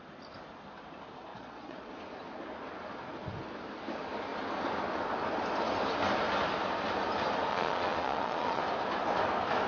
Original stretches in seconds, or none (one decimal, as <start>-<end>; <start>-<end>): 0.0-1.3; 1.9-7.5; 8.6-9.7